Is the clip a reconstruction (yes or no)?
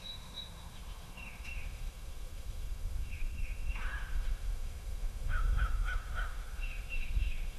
yes